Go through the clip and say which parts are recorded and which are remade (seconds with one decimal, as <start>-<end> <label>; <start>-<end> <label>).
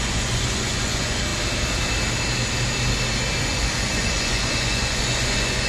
0.0-1.3 remade; 1.3-3.4 recorded; 3.4-5.7 remade